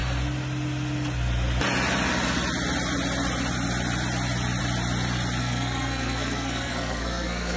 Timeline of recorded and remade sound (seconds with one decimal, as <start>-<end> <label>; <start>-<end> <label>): 0.0-5.4 recorded; 5.4-7.6 remade